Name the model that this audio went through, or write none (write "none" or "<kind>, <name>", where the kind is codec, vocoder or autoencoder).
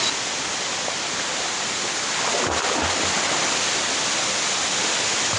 none